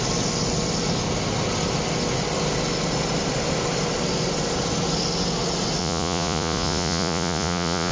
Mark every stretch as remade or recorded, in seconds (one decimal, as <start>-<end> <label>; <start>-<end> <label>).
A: 0.0-5.8 recorded; 5.8-7.9 remade